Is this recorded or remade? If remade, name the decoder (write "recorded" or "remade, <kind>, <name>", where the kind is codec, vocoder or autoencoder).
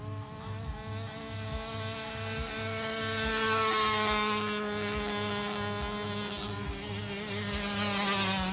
recorded